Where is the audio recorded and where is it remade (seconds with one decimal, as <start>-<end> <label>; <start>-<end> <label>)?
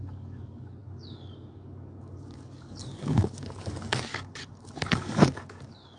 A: 0.0-6.0 remade